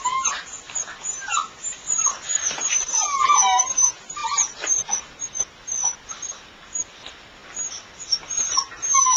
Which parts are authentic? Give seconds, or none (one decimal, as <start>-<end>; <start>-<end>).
0.0-9.2